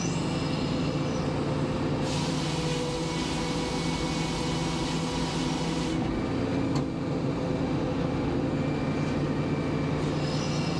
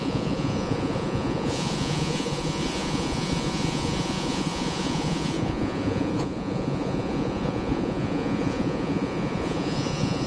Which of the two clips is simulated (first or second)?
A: second